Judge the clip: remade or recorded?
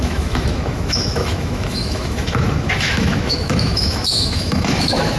remade